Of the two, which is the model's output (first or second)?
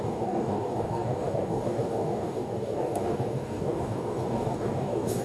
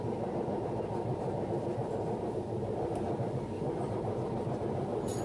first